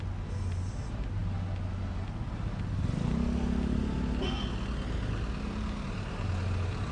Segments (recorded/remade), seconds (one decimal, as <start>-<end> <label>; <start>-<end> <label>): 0.0-6.9 recorded